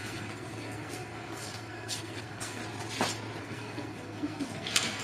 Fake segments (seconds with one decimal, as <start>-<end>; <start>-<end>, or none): 0.0-2.6; 3.4-5.0